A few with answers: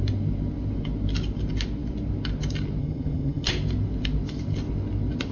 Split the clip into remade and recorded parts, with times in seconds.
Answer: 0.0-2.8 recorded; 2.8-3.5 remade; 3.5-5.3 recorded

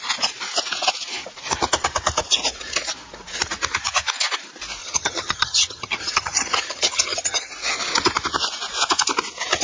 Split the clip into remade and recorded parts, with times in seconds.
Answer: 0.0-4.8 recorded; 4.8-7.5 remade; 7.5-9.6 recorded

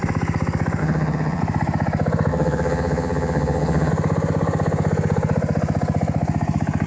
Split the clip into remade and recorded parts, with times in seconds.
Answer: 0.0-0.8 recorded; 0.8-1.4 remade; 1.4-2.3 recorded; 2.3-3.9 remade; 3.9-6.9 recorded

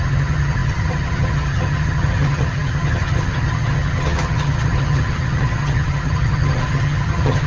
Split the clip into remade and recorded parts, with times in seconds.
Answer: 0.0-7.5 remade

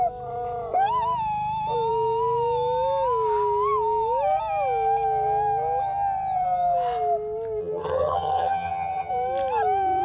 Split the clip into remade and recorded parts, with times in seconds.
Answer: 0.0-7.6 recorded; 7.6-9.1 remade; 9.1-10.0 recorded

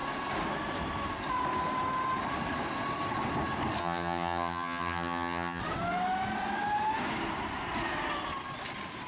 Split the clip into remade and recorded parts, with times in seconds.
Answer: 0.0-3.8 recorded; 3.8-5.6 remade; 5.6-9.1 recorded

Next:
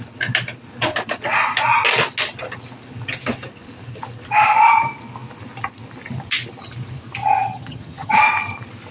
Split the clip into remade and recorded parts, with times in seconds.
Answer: 0.0-7.2 recorded; 7.2-8.2 remade; 8.2-8.9 recorded